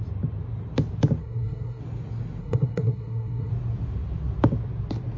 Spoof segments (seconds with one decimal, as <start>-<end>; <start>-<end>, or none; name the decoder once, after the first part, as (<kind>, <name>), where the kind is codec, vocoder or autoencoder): 1.2-1.8 (codec, SNAC); 2.4-3.5